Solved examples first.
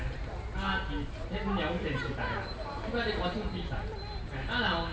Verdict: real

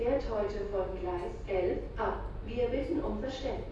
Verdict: real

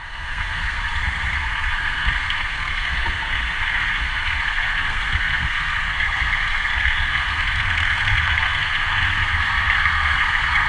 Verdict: fake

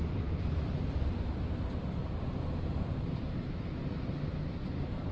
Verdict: real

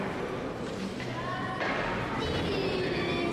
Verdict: real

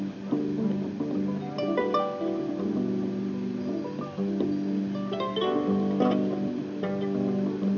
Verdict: real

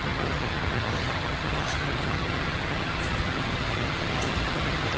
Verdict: fake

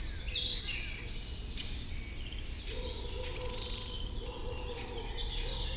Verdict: real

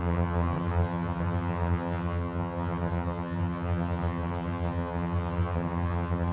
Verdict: fake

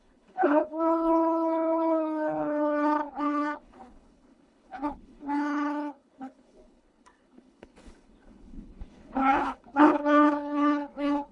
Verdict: fake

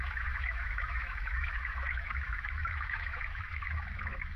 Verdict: fake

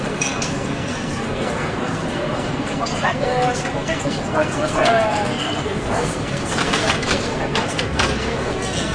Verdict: fake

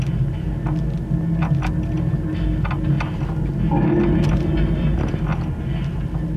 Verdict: real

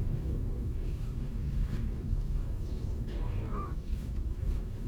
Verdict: fake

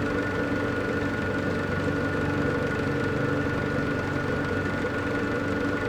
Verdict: real